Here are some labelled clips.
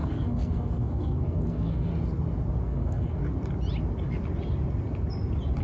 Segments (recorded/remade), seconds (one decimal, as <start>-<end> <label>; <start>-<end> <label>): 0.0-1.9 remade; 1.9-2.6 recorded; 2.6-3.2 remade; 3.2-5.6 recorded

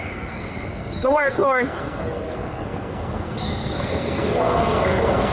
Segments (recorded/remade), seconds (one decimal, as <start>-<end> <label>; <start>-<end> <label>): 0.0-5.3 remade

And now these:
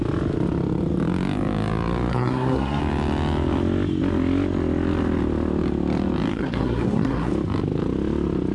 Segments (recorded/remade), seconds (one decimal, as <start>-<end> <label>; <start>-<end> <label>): 0.0-2.1 recorded; 2.1-2.8 remade; 2.8-6.3 recorded; 6.3-7.3 remade; 7.3-8.5 recorded